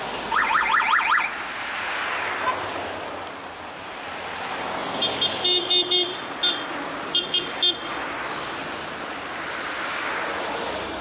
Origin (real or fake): real